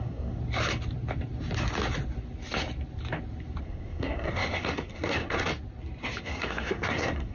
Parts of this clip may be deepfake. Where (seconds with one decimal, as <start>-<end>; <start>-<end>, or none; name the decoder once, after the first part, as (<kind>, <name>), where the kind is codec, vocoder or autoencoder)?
0.0-0.4 (codec, SNAC); 3.6-5.5; 6.2-7.3